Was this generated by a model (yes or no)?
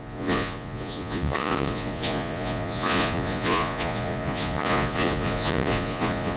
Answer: yes